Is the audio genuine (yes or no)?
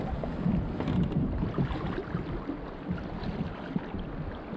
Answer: yes